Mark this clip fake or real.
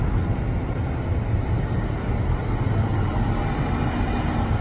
real